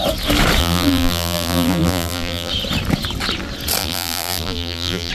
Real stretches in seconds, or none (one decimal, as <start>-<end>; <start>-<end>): 0.0-0.6; 2.5-3.8